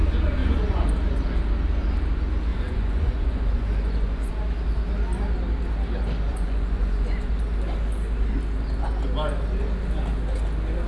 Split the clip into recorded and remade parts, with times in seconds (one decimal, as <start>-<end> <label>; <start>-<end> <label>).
0.0-0.4 recorded; 0.4-0.9 remade; 0.9-2.5 recorded; 2.5-4.3 remade; 4.3-6.3 recorded; 6.3-7.3 remade; 7.3-10.9 recorded